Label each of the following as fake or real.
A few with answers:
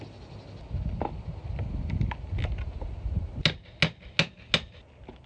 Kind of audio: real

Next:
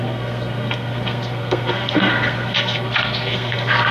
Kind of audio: fake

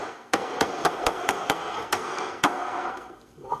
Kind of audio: fake